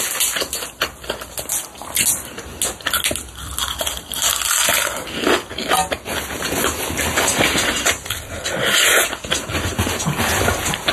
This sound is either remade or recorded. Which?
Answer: recorded